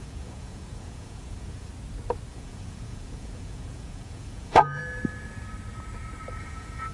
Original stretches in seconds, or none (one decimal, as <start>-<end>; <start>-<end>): 1.7-2.3; 4.8-6.4